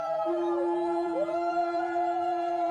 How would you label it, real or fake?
fake